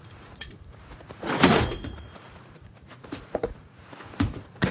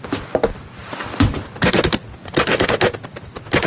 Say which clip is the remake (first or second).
first